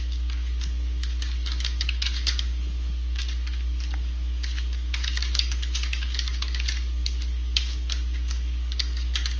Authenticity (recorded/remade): remade